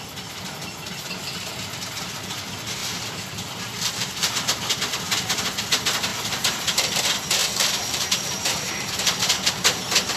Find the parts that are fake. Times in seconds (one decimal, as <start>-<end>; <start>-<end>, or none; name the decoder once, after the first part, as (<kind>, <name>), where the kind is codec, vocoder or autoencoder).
2.8-4.3 (vocoder, BigVGAN v2); 6.1-7.0; 7.4-9.5